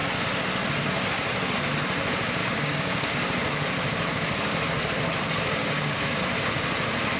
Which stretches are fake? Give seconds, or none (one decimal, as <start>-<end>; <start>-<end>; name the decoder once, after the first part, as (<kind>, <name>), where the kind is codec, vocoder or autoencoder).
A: 2.4-3.1 (codec, DAC); 5.6-6.2